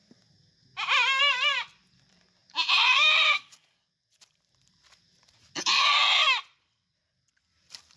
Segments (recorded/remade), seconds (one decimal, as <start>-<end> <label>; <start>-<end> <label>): 0.0-1.2 recorded; 1.2-6.0 remade; 6.0-6.6 recorded; 6.6-8.0 remade